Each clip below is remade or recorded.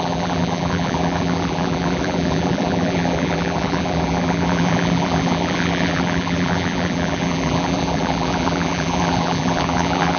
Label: remade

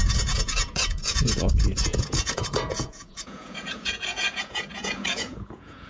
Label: remade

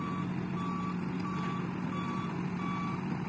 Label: recorded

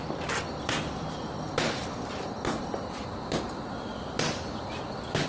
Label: recorded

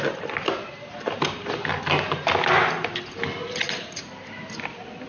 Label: recorded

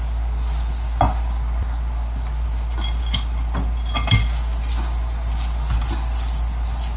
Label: recorded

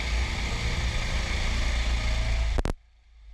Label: recorded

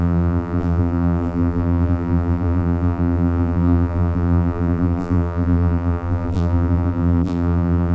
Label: remade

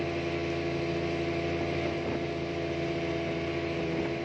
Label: recorded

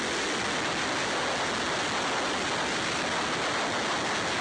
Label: recorded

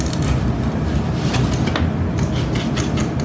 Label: recorded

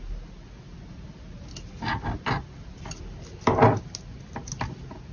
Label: recorded